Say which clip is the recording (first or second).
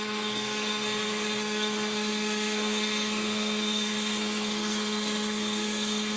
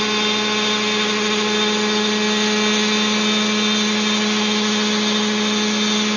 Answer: second